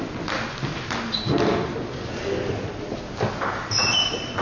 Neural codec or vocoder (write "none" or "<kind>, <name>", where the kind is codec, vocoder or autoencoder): none